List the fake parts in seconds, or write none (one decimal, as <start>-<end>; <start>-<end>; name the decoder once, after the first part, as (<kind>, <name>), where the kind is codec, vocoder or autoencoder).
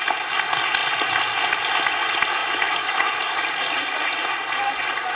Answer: 2.4-3.4 (autoencoder, DAC-VAE)